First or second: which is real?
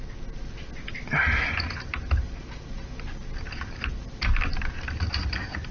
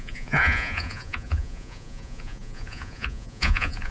first